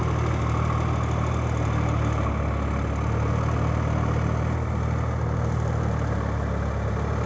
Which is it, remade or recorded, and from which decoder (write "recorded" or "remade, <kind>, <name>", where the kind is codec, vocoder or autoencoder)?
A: recorded